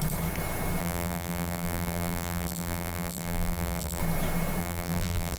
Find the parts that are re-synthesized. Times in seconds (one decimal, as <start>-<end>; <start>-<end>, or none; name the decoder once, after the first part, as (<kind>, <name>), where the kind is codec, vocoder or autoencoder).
0.8-4.0 (vocoder, BigVGAN v2); 4.6-5.4